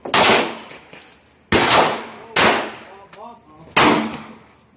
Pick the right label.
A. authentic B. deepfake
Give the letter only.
A